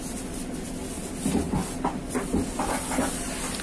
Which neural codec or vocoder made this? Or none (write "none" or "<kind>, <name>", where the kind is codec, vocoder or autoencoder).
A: none